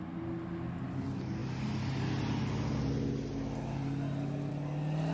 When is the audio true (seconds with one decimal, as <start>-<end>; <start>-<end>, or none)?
0.0-5.1